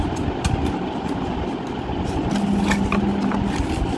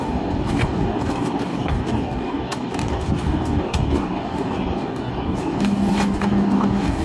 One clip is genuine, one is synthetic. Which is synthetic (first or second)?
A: second